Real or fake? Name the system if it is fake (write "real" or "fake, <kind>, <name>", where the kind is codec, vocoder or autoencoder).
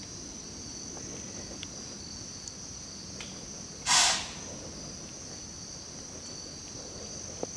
real